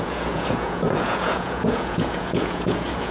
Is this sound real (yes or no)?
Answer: no